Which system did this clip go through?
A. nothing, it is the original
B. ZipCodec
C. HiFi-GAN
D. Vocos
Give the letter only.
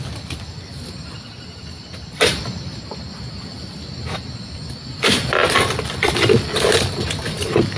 A